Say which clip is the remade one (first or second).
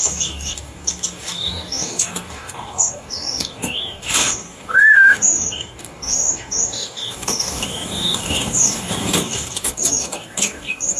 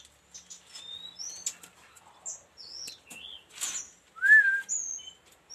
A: first